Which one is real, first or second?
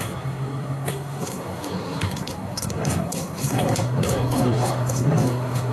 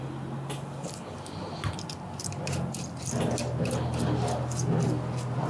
second